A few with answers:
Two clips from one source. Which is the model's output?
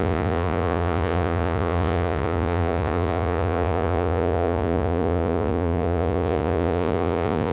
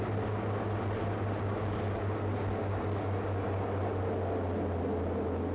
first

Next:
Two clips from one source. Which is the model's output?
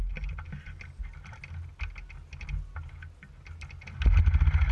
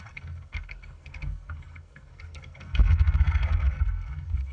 second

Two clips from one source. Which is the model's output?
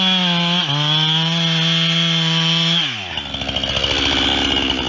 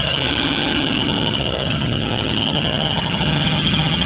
second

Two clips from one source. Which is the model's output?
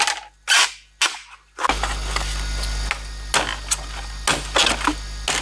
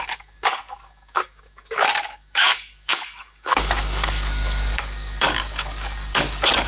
second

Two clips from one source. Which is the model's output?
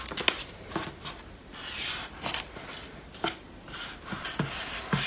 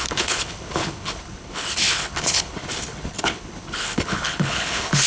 second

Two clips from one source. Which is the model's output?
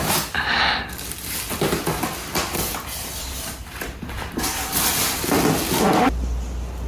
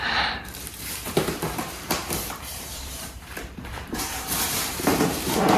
second